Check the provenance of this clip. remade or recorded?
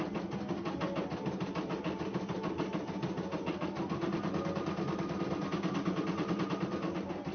recorded